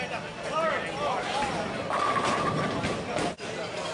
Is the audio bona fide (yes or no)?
yes